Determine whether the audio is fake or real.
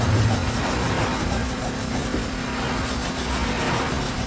real